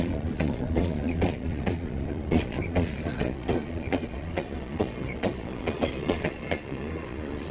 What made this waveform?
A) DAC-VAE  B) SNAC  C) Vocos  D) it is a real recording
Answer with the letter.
C